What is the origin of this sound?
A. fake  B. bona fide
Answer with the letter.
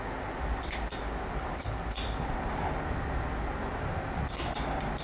B